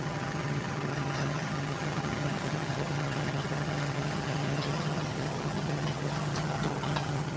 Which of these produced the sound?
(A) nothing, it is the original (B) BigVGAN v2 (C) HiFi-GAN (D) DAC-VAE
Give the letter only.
C